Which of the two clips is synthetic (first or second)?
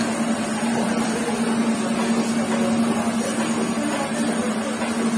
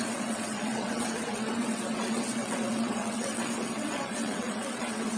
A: second